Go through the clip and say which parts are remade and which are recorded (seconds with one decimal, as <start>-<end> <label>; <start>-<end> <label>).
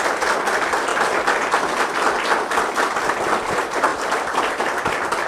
0.0-0.9 remade; 0.9-3.1 recorded; 3.1-5.3 remade